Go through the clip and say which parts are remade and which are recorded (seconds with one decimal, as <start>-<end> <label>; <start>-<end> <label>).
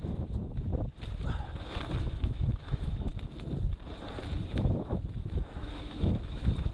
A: 0.0-0.7 remade; 0.7-2.0 recorded; 2.0-3.1 remade; 3.1-4.4 recorded; 4.4-6.7 remade